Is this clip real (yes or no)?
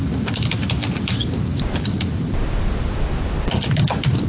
yes